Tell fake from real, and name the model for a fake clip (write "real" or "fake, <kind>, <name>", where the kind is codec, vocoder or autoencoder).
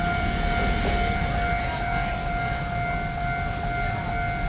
real